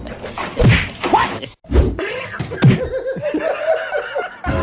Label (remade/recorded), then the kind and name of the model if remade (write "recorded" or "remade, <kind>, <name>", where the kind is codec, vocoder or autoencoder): recorded